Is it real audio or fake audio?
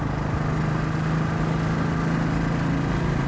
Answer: real